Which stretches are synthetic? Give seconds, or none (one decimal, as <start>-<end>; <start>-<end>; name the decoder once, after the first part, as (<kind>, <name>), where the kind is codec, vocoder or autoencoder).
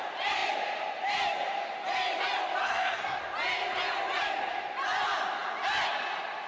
2.6-3.2 (codec, SNAC)